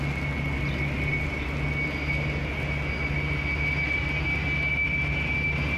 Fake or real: real